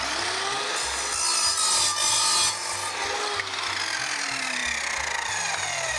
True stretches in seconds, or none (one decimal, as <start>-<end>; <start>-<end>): 0.0-6.0